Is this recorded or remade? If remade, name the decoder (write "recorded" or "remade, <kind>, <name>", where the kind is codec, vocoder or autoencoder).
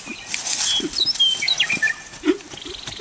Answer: recorded